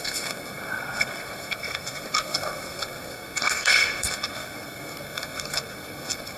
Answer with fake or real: fake